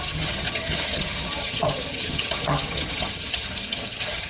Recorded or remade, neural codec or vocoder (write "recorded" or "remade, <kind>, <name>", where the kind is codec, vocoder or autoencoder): remade, vocoder, HiFi-GAN